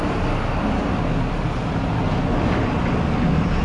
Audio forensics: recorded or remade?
recorded